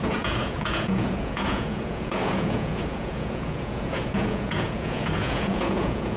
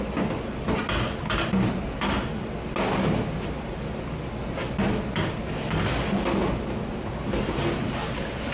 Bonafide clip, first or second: second